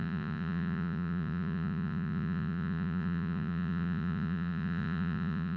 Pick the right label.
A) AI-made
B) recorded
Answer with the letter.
A